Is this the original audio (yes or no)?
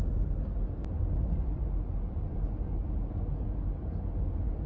yes